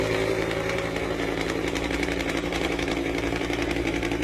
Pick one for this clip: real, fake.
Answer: fake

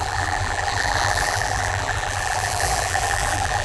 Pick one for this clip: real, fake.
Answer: fake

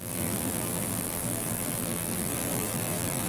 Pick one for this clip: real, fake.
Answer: fake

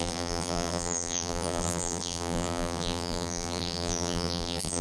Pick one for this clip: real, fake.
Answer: fake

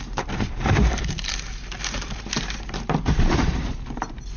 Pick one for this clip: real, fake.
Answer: fake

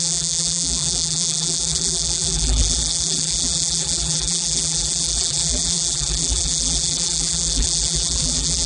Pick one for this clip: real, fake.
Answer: fake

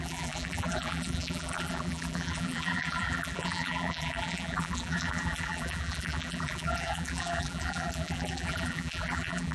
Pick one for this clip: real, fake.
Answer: fake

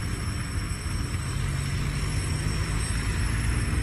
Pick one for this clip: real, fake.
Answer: real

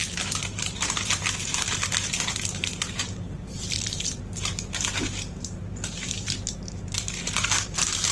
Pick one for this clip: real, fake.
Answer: fake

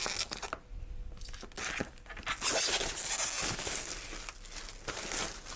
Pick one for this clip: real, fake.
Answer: real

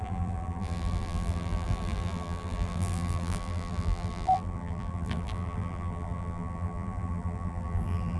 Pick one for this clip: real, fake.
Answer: fake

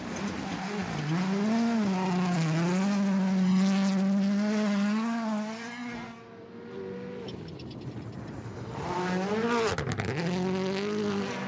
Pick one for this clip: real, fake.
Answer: real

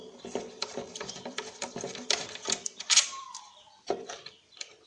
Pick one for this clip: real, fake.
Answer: fake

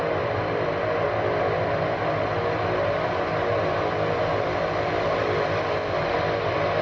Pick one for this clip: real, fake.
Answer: real